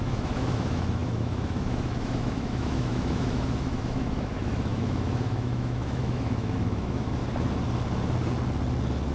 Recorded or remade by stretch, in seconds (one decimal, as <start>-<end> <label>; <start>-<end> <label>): 0.0-7.2 remade; 7.2-9.1 recorded